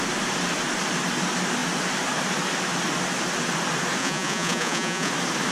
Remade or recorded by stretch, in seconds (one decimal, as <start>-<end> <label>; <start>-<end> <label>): 0.0-4.0 recorded; 4.0-5.1 remade; 5.1-5.5 recorded